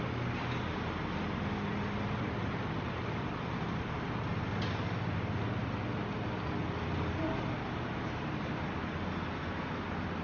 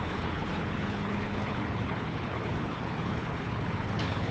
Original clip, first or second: first